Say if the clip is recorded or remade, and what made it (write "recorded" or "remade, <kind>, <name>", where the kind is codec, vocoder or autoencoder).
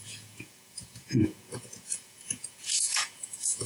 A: remade, vocoder, Vocos